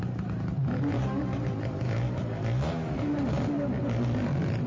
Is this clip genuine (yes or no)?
yes